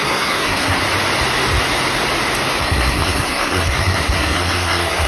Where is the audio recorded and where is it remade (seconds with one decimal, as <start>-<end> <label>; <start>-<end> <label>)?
0.0-0.8 remade; 0.8-2.6 recorded; 2.6-5.1 remade